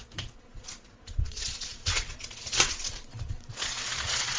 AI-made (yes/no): yes